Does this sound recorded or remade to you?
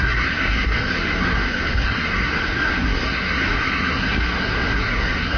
remade